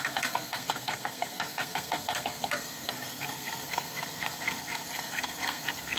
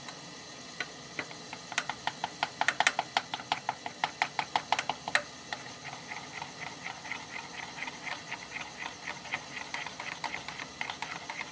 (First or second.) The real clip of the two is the second